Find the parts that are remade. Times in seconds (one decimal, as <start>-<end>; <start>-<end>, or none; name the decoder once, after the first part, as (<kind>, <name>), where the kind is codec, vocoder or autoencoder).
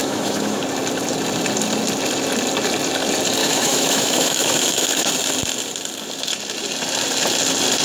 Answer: 0.0-0.6 (autoencoder, DAC-VAE); 3.4-5.1